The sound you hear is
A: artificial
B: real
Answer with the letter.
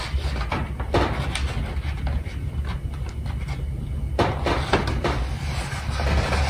B